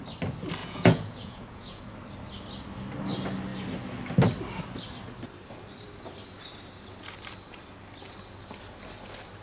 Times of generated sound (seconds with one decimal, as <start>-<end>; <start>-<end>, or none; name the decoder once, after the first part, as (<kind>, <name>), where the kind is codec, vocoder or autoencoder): 0.6-1.8 (vocoder, Vocos)